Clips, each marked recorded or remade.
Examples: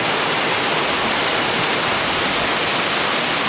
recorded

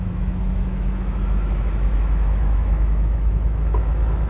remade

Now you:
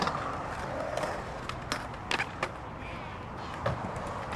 recorded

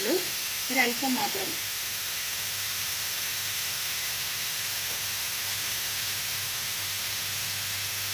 remade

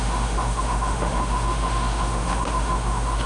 remade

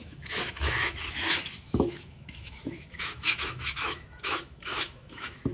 remade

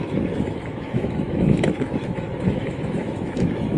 remade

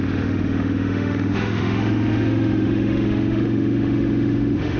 remade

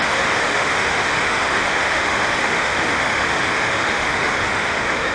remade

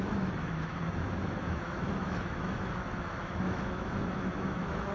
remade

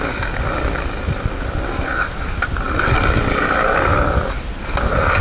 recorded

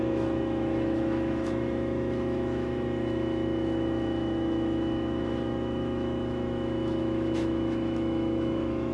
remade